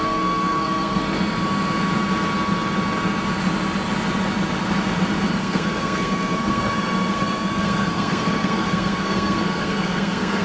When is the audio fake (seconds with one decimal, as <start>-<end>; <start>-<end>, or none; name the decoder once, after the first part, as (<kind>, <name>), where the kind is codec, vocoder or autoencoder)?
0.0-1.0 (codec, SNAC); 5.4-10.4